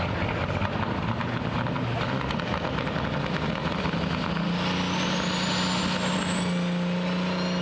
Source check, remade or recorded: recorded